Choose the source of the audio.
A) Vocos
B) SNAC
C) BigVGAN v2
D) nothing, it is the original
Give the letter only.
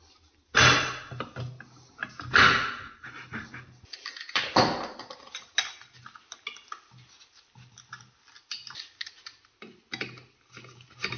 D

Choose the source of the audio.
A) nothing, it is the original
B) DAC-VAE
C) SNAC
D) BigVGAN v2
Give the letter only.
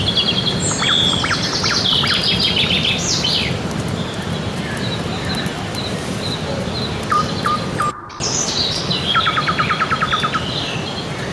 A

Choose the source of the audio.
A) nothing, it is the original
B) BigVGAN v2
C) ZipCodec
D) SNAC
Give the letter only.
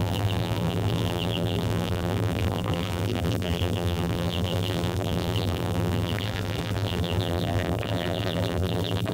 B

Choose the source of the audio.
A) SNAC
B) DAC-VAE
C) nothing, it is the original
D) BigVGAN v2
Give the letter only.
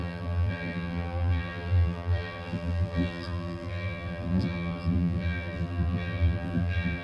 D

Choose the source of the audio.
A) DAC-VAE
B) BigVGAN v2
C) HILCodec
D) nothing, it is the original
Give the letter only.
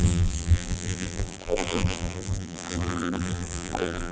B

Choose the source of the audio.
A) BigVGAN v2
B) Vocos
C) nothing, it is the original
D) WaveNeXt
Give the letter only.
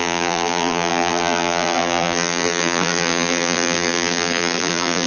A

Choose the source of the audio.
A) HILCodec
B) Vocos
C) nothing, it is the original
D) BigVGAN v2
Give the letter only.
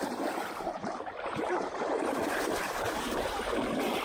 D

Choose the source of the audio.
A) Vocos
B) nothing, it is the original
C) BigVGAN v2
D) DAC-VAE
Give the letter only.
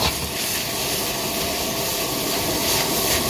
B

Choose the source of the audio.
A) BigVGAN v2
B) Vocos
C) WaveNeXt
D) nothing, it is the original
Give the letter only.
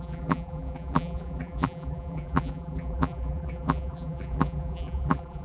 A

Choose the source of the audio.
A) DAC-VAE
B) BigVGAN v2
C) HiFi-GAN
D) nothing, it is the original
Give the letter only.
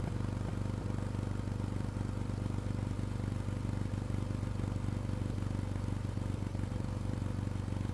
D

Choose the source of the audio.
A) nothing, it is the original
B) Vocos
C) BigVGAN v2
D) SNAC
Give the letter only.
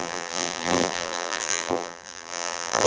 C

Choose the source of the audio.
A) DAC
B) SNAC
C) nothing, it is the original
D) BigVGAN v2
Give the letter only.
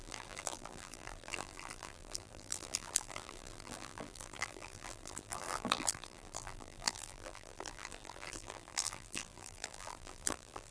D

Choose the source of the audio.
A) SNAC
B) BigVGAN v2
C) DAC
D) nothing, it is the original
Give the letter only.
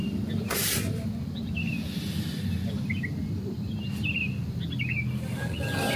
D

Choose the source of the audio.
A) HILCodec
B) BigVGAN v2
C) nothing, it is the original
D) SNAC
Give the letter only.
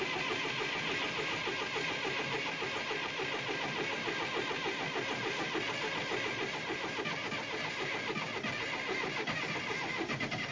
C